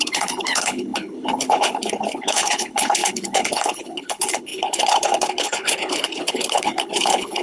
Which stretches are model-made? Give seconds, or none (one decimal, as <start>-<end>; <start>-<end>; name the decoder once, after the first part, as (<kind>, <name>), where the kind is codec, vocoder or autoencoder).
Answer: 0.0-7.4 (codec, HILCodec)